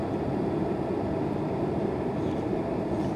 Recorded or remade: recorded